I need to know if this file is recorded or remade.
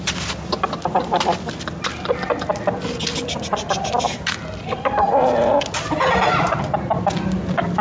recorded